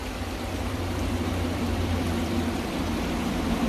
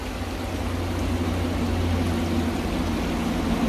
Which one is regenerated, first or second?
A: first